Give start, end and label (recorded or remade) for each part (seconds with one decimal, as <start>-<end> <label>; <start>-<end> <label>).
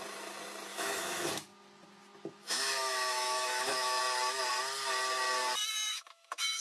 0.0-0.7 recorded; 0.7-1.3 remade; 1.3-2.4 recorded; 2.4-4.0 remade; 4.0-5.9 recorded; 5.9-6.6 remade